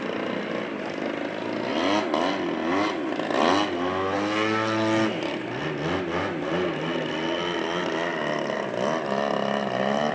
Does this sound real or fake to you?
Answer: real